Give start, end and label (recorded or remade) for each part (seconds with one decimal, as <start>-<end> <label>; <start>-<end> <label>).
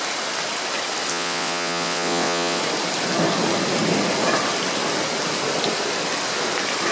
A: 0.0-1.1 recorded; 1.1-2.6 remade; 2.6-6.9 recorded